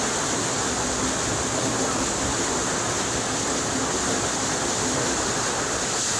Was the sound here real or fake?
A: real